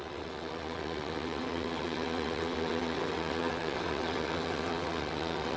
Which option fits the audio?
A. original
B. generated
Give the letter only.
B